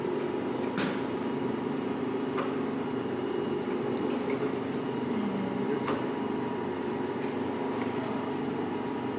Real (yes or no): yes